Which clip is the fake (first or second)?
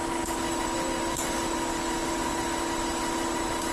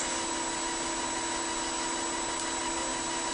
first